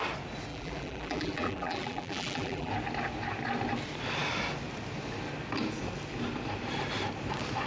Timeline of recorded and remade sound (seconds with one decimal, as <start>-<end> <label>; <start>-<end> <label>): 0.0-0.5 recorded; 0.5-2.7 remade; 2.7-7.7 recorded